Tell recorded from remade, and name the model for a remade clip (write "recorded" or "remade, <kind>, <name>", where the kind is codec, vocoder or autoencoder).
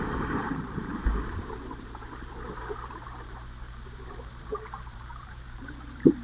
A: remade, vocoder, BigVGAN v2